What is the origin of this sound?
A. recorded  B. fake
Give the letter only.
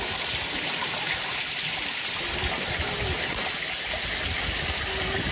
A